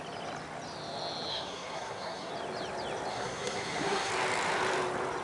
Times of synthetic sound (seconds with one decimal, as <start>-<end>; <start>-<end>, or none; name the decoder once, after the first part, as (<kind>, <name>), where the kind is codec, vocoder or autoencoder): 1.3-2.3 (codec, SNAC); 3.1-4.1